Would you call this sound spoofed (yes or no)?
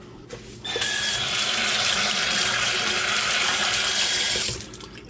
no